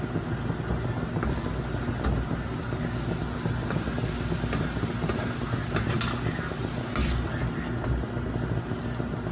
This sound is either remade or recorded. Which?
recorded